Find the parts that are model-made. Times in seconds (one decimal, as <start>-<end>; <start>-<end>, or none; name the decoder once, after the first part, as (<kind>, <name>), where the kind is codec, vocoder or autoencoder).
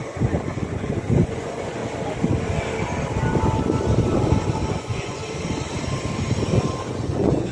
0.0-1.8 (vocoder, Vocos); 4.8-5.2; 6.9-7.5